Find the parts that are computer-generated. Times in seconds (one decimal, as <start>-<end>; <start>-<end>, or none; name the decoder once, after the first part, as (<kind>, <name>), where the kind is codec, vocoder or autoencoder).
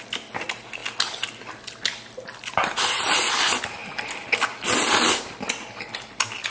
none